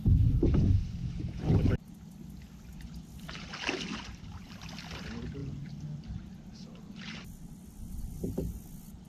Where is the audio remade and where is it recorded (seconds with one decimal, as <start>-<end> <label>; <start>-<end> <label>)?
0.0-9.1 recorded